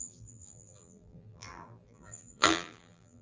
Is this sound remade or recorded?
remade